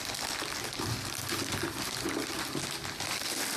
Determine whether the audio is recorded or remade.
recorded